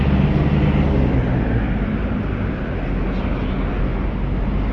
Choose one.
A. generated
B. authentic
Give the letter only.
B